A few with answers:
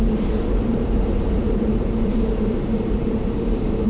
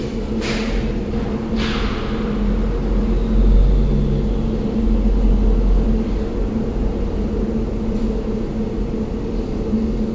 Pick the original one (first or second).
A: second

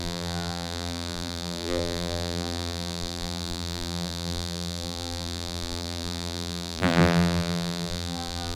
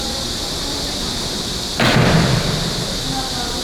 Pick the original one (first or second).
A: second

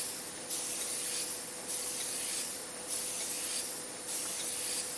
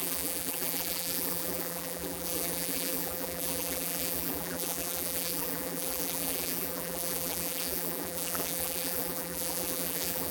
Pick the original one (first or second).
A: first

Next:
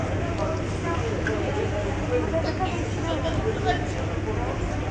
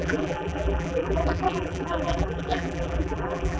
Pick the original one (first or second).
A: first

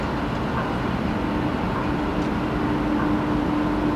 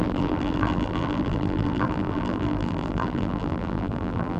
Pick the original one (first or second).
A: first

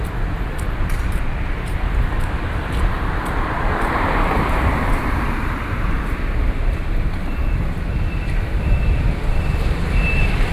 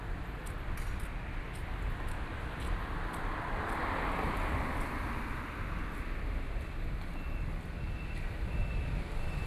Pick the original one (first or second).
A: second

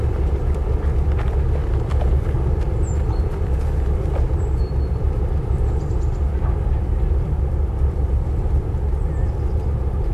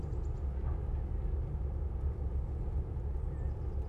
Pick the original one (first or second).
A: second